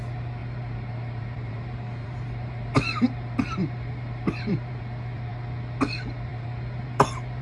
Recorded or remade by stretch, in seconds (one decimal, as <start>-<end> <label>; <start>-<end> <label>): 0.0-0.4 recorded; 0.4-4.8 remade; 4.8-6.3 recorded; 6.3-7.4 remade